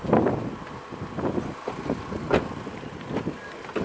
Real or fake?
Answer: real